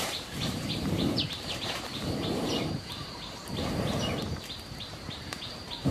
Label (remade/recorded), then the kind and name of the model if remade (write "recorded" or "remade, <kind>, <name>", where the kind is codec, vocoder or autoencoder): remade, vocoder, BigVGAN v2